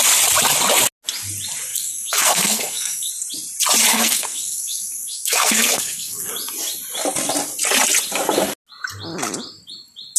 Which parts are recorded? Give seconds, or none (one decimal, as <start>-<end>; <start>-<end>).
0.0-1.7; 3.1-3.9; 6.3-10.2